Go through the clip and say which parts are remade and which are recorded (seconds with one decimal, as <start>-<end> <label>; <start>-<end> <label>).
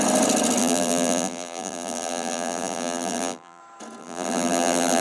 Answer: 0.0-0.6 recorded; 0.6-3.6 remade; 3.6-4.0 recorded; 4.0-5.0 remade